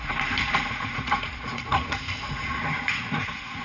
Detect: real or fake fake